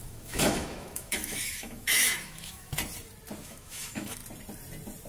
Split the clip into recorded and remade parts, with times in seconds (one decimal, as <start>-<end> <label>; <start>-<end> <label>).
0.0-2.7 remade; 2.7-3.4 recorded; 3.4-4.2 remade; 4.2-5.1 recorded